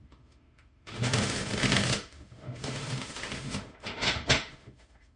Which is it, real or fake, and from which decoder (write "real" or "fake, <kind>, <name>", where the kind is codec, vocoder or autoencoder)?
fake, autoencoder, DAC-VAE